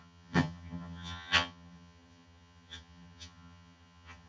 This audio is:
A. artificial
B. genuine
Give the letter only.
A